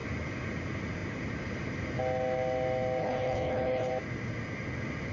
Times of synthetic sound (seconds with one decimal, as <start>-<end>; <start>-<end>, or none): 3.0-3.9